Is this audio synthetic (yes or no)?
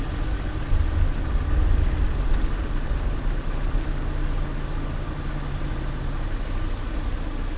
no